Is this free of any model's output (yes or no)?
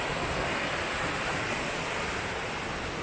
yes